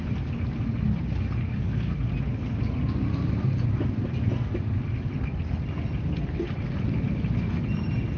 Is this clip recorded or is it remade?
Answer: recorded